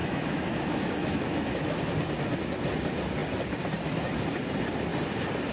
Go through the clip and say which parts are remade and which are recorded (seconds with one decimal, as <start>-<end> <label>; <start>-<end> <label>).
0.0-2.0 remade; 2.0-5.5 recorded